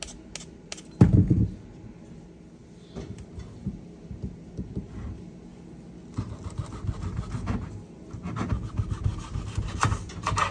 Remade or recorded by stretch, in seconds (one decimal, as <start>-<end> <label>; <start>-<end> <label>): 0.0-10.5 recorded